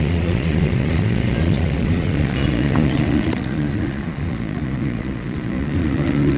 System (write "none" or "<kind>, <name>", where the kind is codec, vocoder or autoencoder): vocoder, Vocos